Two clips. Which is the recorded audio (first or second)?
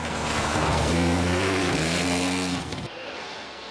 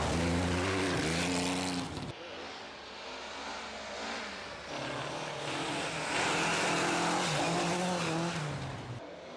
second